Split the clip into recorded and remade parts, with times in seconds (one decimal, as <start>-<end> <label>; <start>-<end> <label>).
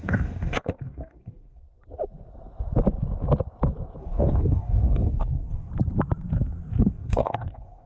0.0-1.6 remade; 1.6-4.0 recorded; 4.0-5.7 remade; 5.7-6.8 recorded; 6.8-7.9 remade